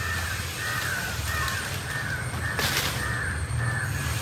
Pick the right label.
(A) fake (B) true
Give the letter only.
B